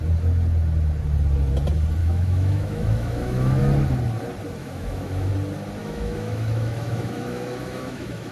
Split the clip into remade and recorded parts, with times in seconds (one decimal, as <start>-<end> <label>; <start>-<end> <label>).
0.0-2.0 recorded; 2.0-3.6 remade; 3.6-4.6 recorded; 4.6-5.3 remade; 5.3-5.8 recorded; 5.8-8.3 remade